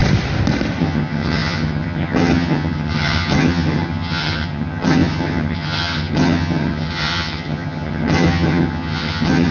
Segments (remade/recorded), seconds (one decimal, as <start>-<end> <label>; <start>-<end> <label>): 0.0-0.8 recorded; 0.8-9.5 remade